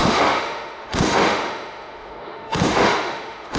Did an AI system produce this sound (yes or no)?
yes